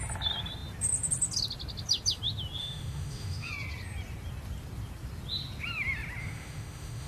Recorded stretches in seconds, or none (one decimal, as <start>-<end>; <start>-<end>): 0.0-2.6; 3.5-6.2